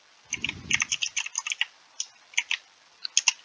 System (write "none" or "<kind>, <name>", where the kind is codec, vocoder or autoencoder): none